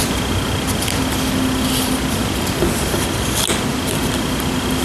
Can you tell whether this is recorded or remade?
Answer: recorded